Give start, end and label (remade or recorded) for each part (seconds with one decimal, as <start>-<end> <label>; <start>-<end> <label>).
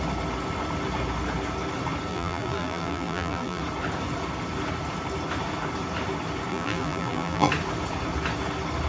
0.0-2.1 recorded; 2.1-3.6 remade; 3.6-6.5 recorded; 6.5-7.5 remade; 7.5-8.9 recorded